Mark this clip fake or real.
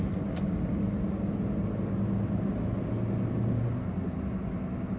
real